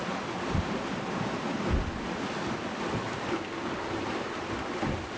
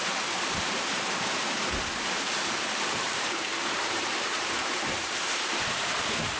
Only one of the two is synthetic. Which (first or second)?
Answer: second